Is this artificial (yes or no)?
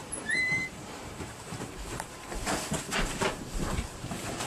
yes